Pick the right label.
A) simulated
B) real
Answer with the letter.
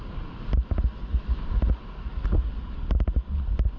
B